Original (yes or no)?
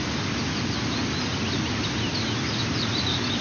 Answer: yes